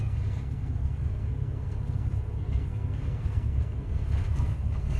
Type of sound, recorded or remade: remade